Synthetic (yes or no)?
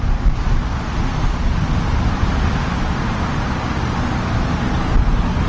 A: no